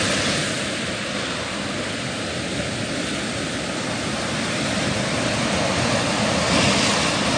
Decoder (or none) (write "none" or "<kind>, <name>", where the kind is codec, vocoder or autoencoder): none